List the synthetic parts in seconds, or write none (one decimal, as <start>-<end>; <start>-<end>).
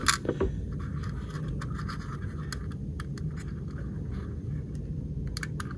none